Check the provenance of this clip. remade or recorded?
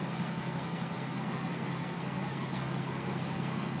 remade